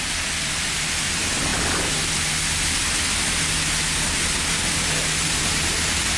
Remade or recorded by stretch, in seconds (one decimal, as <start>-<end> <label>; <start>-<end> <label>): 0.0-1.5 remade; 1.5-5.2 recorded; 5.2-6.2 remade